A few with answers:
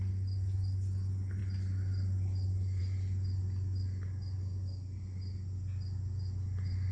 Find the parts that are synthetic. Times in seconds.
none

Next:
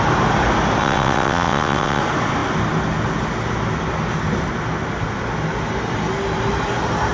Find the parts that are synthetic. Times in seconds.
0.8-2.0 (vocoder, WaveNeXt)

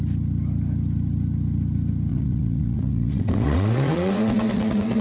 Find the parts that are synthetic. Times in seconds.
2.1-5.0 (vocoder, WaveNeXt)

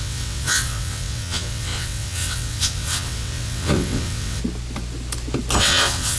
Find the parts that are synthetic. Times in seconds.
0.0-4.4 (vocoder, WaveNeXt); 5.6-6.2